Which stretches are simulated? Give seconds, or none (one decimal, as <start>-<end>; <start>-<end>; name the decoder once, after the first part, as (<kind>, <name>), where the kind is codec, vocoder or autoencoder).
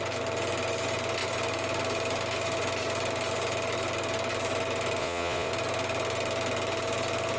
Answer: 5.0-5.5 (vocoder, Vocos)